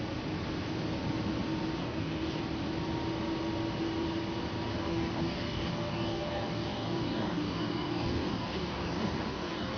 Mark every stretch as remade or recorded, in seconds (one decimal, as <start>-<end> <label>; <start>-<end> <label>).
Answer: 0.0-1.8 recorded; 1.8-2.4 remade; 2.4-4.7 recorded; 4.7-9.8 remade